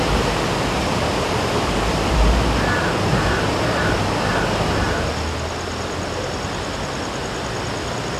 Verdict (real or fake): real